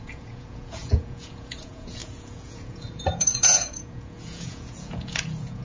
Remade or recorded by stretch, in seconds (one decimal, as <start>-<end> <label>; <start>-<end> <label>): 0.0-5.6 remade